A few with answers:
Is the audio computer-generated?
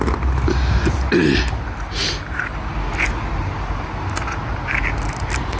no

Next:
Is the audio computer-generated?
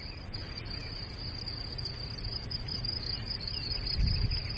yes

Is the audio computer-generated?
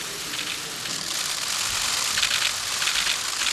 no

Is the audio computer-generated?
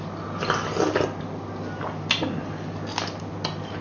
no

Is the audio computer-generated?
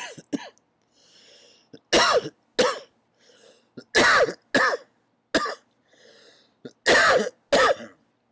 no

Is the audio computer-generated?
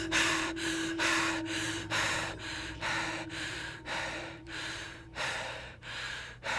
yes